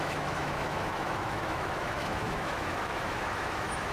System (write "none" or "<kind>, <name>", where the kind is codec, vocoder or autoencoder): autoencoder, DAC-VAE